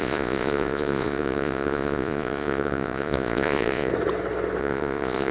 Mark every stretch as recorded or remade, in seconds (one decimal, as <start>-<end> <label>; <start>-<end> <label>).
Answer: 0.0-3.9 remade; 3.9-4.6 recorded; 4.6-5.3 remade